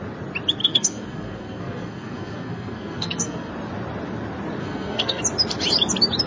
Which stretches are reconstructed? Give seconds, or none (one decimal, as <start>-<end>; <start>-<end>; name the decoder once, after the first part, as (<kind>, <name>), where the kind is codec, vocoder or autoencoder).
0.6-3.5 (codec, SNAC); 4.6-5.2